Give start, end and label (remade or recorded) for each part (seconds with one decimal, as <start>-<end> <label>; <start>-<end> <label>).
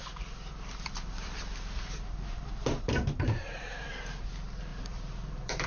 0.0-0.5 recorded; 0.5-3.9 remade; 3.9-4.7 recorded; 4.7-5.7 remade